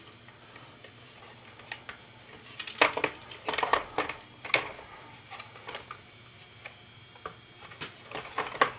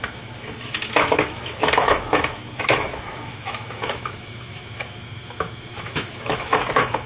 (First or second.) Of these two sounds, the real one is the first